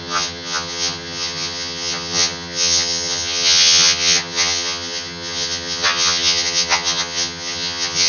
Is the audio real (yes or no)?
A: no